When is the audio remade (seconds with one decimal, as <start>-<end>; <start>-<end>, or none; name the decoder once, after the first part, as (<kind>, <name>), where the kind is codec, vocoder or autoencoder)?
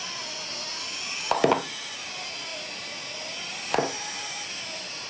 none